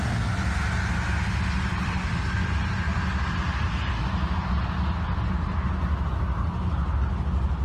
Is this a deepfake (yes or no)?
no